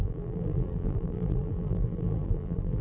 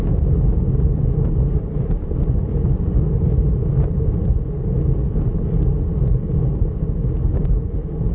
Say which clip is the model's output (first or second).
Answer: first